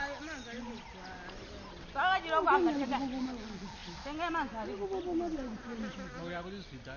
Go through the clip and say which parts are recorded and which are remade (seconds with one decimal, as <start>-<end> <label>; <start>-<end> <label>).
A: 0.0-7.0 recorded